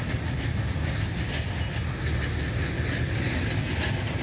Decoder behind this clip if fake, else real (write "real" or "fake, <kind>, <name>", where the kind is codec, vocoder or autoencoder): real